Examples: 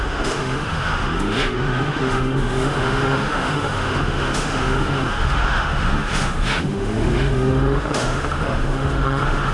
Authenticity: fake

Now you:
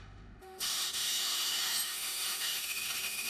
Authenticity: fake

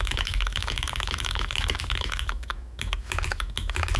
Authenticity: fake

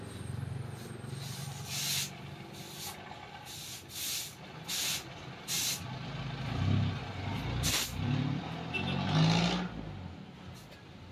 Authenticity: real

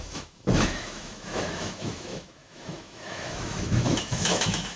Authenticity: fake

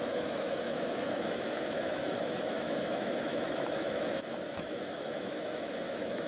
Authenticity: fake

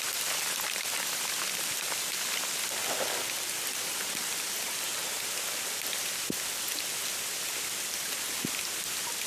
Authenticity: real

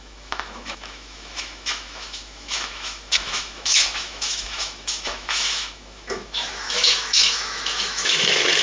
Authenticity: fake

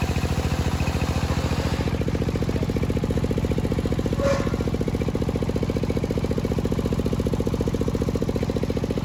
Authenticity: real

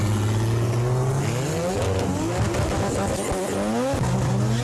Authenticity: real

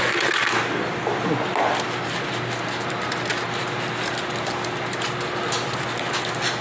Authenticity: real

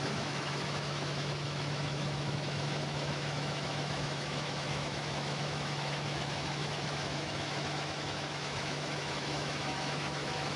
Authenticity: fake